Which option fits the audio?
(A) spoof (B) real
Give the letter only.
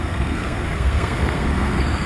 A